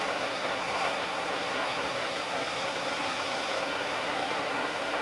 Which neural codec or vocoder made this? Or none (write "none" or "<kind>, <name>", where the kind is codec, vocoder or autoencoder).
codec, SNAC